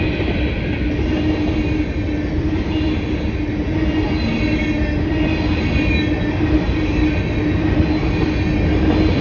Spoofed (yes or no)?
no